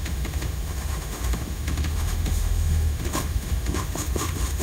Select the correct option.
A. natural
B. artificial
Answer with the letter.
B